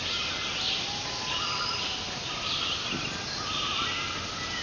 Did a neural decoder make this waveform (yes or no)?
no